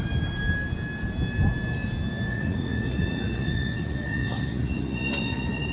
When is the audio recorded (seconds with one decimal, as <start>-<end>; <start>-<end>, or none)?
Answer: 0.0-2.3

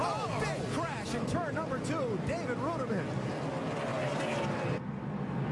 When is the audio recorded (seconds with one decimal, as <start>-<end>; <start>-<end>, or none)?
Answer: 0.0-5.5

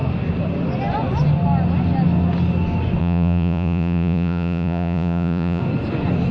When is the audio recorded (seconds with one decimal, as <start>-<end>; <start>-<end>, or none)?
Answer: 0.0-3.0; 5.6-6.3

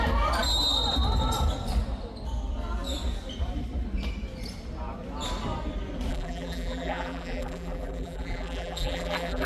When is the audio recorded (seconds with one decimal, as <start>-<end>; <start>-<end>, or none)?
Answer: 0.0-6.1

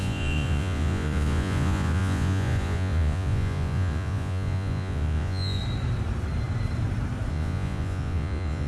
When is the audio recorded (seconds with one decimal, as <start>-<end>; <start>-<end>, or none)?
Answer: 5.6-7.3